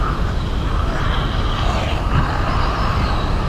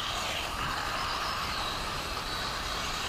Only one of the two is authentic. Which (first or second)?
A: first